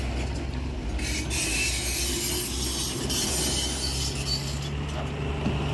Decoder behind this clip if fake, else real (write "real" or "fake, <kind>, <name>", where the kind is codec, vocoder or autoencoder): real